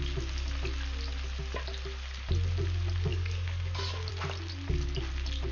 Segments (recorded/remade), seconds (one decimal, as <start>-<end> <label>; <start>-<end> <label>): 0.0-3.1 recorded; 3.1-4.1 remade; 4.1-5.5 recorded